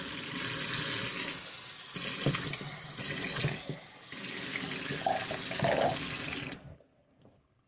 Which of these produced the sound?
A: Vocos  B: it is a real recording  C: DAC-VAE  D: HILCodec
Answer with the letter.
B